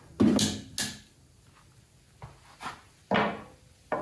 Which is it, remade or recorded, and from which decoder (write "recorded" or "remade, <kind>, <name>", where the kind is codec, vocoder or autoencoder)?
recorded